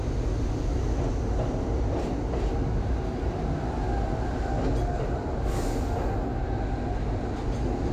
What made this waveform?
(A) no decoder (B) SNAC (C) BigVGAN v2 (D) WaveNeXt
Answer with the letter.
A